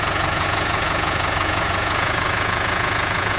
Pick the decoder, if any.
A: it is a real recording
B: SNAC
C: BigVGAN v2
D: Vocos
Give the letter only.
D